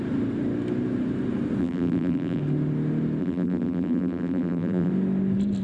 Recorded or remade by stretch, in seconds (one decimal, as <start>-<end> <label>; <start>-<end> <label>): 0.0-1.6 recorded; 1.6-2.4 remade; 2.4-3.2 recorded; 3.2-4.9 remade; 4.9-5.6 recorded